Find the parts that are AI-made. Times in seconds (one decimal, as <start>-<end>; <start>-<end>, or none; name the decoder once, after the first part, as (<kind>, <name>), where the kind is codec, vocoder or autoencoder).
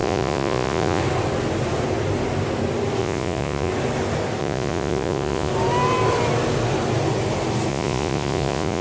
0.0-1.0 (vocoder, Vocos); 3.0-3.7; 4.4-5.5; 7.7-8.8